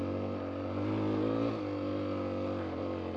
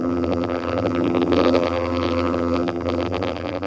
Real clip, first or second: first